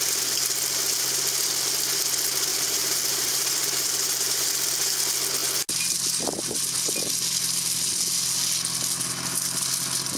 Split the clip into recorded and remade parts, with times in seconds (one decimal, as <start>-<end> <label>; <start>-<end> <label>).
0.0-2.5 recorded; 2.5-4.5 remade; 4.5-10.2 recorded